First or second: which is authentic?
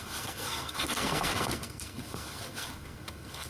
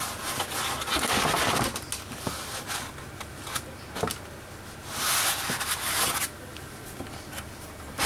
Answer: second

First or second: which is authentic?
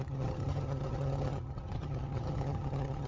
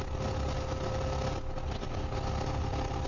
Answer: second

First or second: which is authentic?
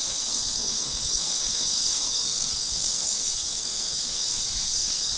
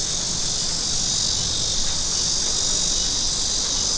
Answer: second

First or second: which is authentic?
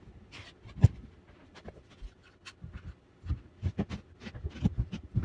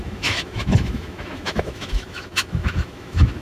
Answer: first